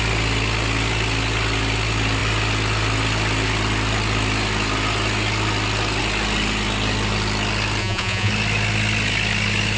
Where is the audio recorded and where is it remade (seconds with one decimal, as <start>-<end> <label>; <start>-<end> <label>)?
0.0-7.8 recorded; 7.8-8.3 remade; 8.3-9.8 recorded